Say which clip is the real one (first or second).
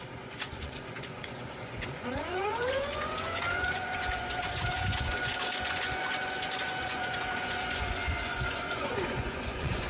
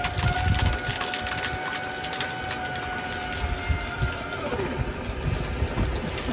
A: second